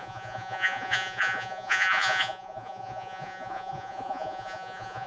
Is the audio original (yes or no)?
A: no